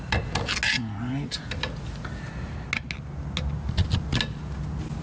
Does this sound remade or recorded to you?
recorded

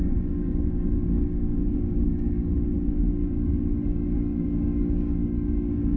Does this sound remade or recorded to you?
remade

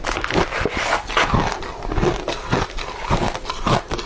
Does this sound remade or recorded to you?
recorded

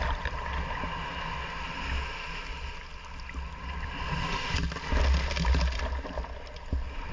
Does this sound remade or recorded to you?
recorded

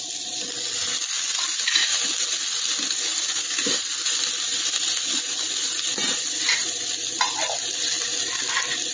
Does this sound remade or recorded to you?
remade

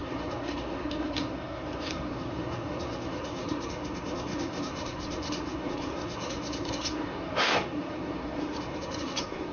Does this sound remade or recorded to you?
remade